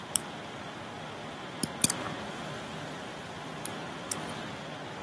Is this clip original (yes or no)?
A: yes